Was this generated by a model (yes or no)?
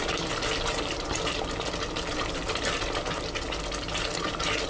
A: no